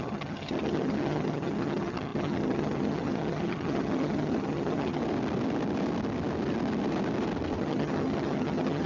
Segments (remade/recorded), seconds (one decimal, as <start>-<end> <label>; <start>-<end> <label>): 0.0-5.0 remade; 5.0-7.6 recorded; 7.6-8.9 remade

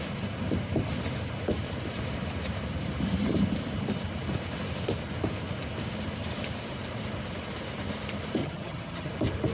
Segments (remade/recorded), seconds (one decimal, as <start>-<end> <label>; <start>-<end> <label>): 0.0-8.4 recorded; 8.4-9.1 remade; 9.1-9.5 recorded

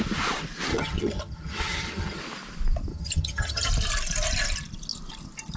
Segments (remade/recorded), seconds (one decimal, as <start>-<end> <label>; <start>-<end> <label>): 0.0-0.7 recorded; 0.7-2.2 remade; 2.2-2.9 recorded; 2.9-3.7 remade; 3.7-5.6 recorded

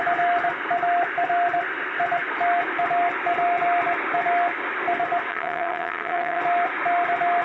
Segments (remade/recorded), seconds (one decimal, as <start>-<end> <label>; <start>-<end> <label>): 0.0-5.3 recorded; 5.3-6.4 remade; 6.4-7.4 recorded

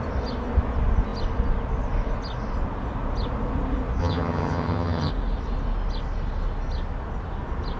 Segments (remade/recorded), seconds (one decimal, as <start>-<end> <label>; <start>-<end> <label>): 0.0-4.0 recorded; 4.0-5.1 remade; 5.1-7.8 recorded